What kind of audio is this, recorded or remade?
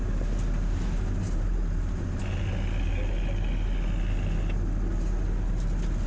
recorded